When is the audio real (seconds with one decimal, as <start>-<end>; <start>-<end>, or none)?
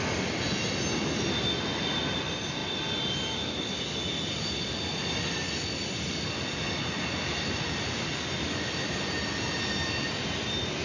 0.0-10.8